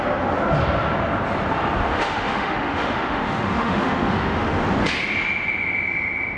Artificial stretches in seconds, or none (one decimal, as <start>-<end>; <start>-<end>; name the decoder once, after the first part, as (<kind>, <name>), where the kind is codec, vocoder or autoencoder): 1.8-4.6 (autoencoder, DAC-VAE)